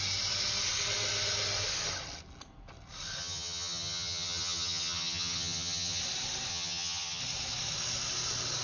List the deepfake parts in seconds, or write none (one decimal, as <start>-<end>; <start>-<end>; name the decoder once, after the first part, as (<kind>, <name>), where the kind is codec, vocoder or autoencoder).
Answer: 3.2-6.0 (vocoder, HiFi-GAN); 6.5-7.2